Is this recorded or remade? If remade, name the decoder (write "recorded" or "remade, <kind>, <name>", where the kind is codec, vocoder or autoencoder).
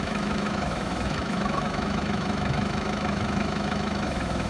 remade, autoencoder, DAC-VAE